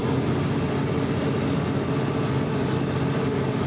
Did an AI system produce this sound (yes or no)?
no